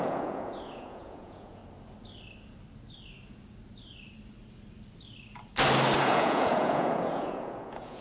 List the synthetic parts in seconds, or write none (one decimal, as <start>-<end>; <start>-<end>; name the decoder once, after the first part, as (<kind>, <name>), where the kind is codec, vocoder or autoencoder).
0.0-1.6 (vocoder, Vocos); 6.0-8.0